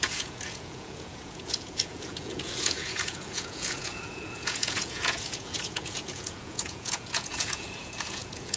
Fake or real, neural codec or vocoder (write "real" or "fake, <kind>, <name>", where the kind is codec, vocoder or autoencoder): fake, vocoder, Vocos